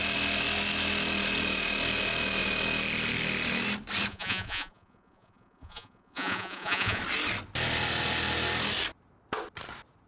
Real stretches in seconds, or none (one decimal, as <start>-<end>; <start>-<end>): 0.0-4.1; 7.0-10.1